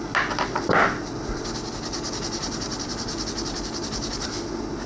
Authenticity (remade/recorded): recorded